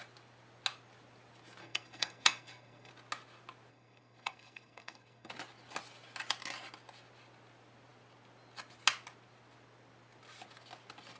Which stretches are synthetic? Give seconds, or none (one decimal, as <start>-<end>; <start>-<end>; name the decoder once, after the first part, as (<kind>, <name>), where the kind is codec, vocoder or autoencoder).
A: 1.6-2.9 (codec, SNAC); 3.7-5.3